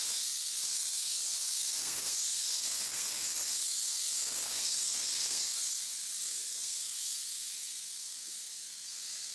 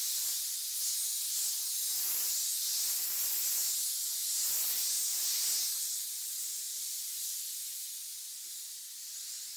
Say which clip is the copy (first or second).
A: first